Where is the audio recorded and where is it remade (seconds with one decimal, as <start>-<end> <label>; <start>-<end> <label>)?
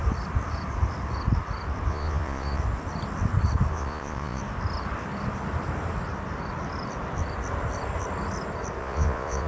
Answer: 0.0-1.9 recorded; 1.9-2.6 remade; 2.6-3.7 recorded; 3.7-4.4 remade; 4.4-8.8 recorded; 8.8-9.5 remade